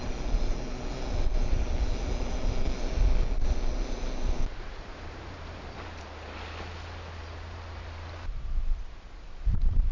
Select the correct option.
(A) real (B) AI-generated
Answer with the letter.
A